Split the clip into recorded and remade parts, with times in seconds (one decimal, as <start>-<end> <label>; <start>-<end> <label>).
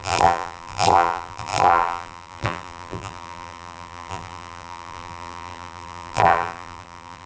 0.0-7.3 remade